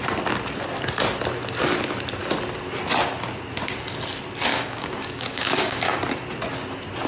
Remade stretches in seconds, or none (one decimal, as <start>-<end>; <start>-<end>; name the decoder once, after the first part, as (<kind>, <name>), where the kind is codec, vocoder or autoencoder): 4.5-6.0 (codec, DAC)

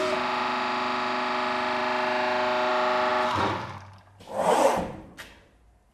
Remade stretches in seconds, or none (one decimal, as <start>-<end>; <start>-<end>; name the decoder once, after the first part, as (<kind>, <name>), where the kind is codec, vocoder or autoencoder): none